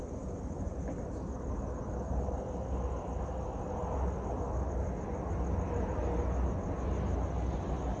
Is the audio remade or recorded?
recorded